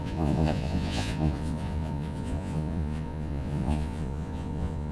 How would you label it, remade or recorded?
remade